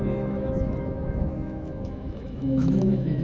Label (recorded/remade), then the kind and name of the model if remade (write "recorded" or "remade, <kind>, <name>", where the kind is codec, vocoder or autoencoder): remade, autoencoder, DAC-VAE